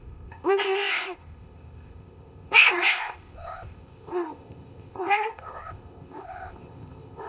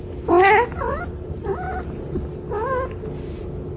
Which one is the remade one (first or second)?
first